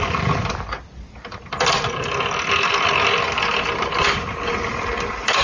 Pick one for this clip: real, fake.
real